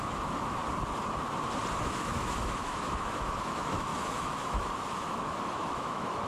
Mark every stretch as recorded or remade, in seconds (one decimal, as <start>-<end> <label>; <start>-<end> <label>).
0.0-0.6 remade; 0.6-1.7 recorded; 1.7-6.3 remade